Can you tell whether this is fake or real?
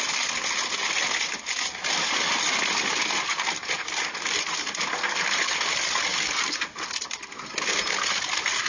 real